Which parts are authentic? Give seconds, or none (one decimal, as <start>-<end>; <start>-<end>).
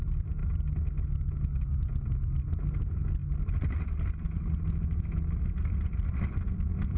0.0-7.0